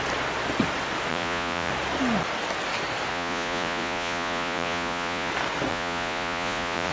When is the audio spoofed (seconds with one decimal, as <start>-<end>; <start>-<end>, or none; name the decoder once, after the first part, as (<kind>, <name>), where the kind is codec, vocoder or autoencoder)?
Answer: 1.1-1.7 (vocoder, Vocos); 3.1-5.3; 5.7-6.9